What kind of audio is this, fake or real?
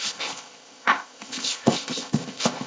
fake